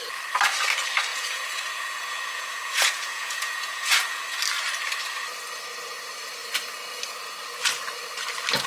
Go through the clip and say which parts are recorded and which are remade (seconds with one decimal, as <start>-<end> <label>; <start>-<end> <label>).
0.0-1.1 recorded; 1.1-4.4 remade; 4.4-8.7 recorded